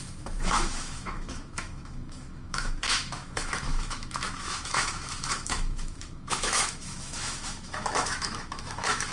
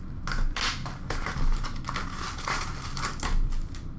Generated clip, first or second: first